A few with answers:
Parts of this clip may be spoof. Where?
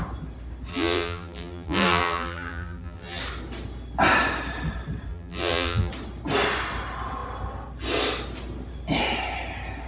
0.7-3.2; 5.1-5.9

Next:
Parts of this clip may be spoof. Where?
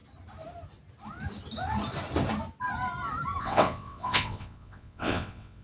3.4-5.6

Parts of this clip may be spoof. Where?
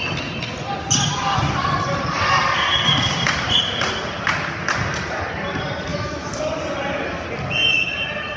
5.9-6.4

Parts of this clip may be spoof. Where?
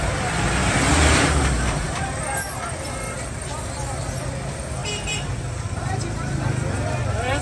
0.6-2.2; 4.8-5.4